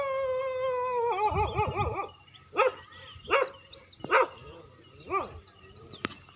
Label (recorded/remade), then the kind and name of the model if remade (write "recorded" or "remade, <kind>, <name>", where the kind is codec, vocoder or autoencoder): recorded